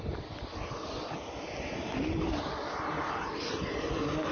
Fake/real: real